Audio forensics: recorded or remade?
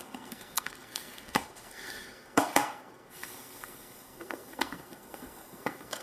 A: remade